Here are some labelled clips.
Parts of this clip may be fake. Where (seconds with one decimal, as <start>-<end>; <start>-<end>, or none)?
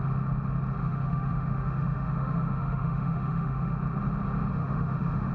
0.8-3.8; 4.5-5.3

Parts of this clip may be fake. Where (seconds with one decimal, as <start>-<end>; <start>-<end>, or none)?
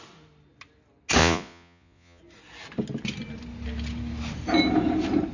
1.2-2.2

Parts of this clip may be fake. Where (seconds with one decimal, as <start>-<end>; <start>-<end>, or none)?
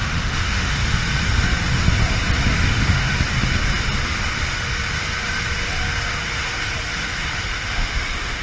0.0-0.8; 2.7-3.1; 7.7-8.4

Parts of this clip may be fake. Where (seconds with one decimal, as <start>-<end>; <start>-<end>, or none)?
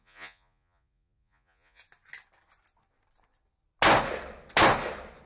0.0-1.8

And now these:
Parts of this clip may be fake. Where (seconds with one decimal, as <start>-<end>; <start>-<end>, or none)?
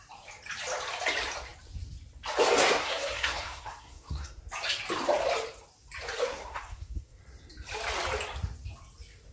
2.6-4.4; 6.2-7.2